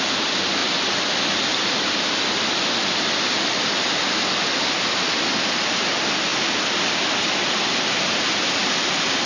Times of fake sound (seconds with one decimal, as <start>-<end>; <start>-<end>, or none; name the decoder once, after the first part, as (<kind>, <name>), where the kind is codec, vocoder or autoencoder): none